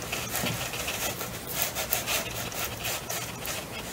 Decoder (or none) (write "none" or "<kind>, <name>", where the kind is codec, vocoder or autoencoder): none